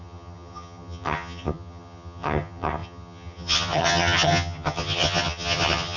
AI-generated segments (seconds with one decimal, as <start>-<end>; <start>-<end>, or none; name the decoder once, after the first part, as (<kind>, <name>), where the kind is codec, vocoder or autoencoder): 0.0-6.0 (vocoder, HiFi-GAN)